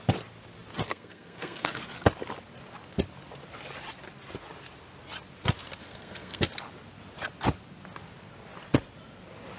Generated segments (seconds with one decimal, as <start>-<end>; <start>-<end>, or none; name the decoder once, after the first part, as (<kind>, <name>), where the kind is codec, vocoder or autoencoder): 0.9-1.8 (codec, SNAC); 5.8-6.4